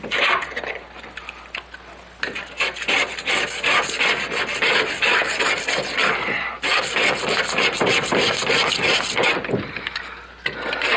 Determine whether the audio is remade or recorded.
recorded